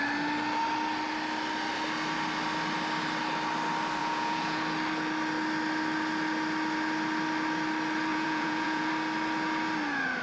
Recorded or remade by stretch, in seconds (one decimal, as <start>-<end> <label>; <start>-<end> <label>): 0.0-4.0 recorded; 4.0-4.6 remade; 4.6-8.1 recorded; 8.1-8.9 remade; 8.9-10.2 recorded